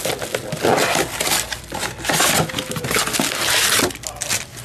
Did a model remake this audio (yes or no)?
no